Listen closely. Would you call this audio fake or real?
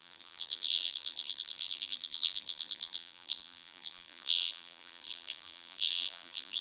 fake